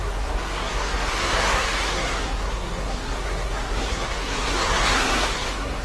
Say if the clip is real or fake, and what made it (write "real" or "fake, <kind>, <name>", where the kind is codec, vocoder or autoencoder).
fake, codec, SNAC